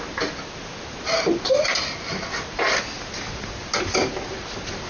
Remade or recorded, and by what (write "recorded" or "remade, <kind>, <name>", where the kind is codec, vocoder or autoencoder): recorded